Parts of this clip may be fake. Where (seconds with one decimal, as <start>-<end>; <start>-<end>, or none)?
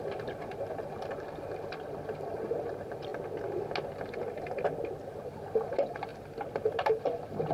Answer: 0.0-3.1; 5.2-6.1; 6.7-7.5